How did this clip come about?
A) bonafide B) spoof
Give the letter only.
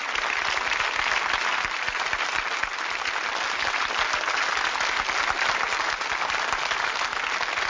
A